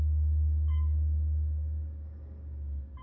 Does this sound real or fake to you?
real